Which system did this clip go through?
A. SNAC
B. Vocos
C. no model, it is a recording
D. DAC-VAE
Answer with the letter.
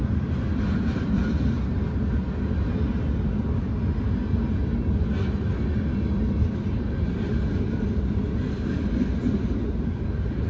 C